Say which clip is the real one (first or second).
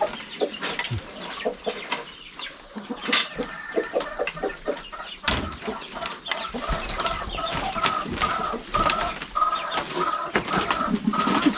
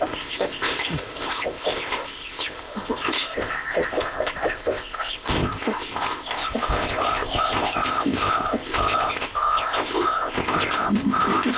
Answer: first